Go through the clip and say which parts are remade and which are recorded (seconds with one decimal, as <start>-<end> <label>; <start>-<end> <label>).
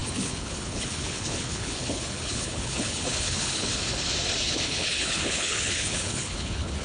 0.0-3.7 remade; 3.7-4.4 recorded; 4.4-6.8 remade